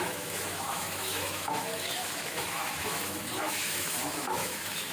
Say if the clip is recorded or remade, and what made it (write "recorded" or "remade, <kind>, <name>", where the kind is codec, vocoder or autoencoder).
remade, autoencoder, DAC-VAE